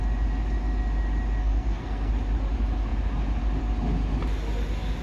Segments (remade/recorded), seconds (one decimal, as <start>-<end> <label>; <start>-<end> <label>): 0.0-1.4 recorded; 1.4-2.1 remade; 2.1-5.0 recorded